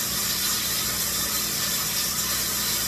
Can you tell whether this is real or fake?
fake